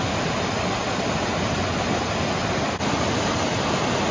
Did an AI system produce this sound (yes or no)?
no